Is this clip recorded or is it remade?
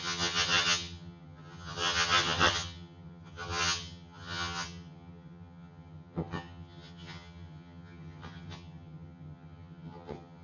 remade